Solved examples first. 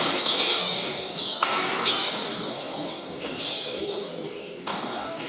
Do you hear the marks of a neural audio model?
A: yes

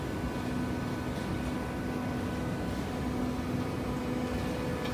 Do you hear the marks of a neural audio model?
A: no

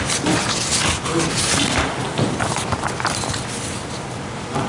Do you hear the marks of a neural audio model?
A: no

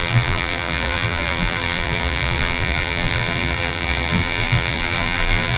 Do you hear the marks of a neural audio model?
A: yes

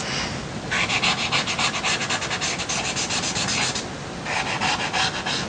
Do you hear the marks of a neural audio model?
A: no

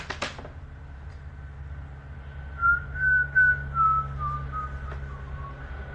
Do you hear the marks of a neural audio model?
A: no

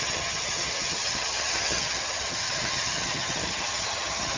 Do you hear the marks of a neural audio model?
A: yes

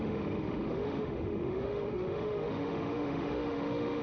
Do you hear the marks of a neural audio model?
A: yes